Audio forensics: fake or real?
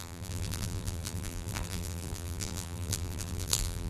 fake